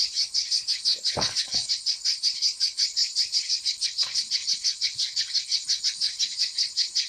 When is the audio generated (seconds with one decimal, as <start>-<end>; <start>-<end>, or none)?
0.0-7.1